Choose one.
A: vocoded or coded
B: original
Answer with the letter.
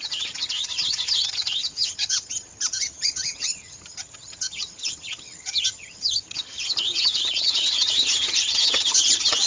A